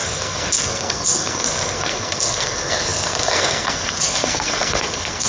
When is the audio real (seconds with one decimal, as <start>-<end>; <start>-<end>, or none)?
none